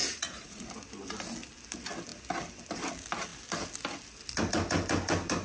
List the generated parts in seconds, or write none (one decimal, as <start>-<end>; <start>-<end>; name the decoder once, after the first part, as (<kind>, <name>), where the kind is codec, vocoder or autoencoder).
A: 0.0-0.7 (vocoder, Vocos)

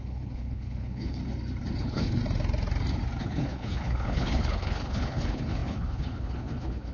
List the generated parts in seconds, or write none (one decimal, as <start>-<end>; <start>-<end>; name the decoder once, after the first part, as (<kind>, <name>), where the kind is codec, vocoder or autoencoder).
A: 0.0-1.2 (codec, HILCodec); 1.8-2.2; 3.2-6.9

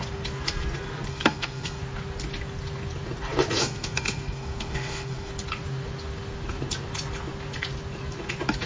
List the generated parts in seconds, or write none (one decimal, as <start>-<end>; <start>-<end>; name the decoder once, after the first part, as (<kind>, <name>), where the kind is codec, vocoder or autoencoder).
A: 1.1-1.8 (codec, SNAC); 3.6-5.3

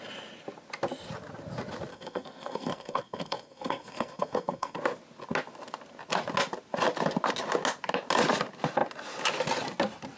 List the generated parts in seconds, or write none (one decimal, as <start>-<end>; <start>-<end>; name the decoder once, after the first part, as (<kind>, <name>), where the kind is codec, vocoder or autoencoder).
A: 1.9-4.8 (codec, SNAC)

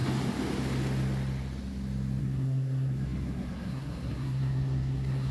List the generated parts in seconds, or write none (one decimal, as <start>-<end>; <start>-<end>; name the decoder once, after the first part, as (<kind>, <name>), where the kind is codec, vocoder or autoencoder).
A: 2.2-5.3 (codec, SNAC)

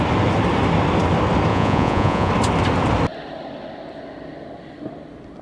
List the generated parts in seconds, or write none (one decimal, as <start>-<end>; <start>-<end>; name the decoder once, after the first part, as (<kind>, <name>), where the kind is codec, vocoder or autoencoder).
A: 1.5-2.3 (vocoder, Vocos)

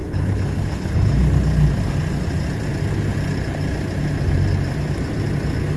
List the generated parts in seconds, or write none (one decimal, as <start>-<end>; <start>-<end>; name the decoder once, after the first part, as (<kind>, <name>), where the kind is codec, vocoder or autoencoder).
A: 0.0-1.2 (codec, HILCodec)

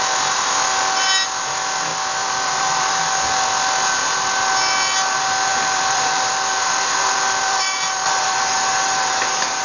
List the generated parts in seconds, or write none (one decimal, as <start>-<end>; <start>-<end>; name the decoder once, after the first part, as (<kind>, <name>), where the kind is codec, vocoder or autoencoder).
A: 1.9-3.0 (vocoder, BigVGAN v2); 5.5-9.2